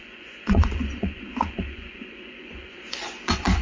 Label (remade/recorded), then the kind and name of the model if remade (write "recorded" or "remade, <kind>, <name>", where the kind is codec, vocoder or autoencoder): remade, vocoder, Vocos